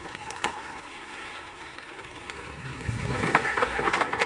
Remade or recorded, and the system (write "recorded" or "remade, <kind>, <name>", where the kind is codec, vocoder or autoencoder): remade, codec, SNAC